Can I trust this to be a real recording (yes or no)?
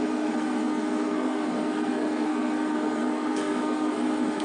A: no